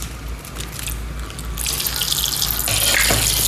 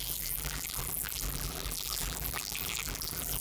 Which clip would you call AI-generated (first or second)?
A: second